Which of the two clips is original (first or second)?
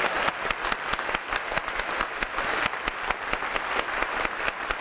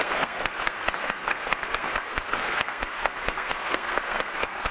first